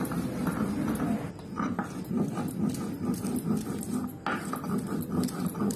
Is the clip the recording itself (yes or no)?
yes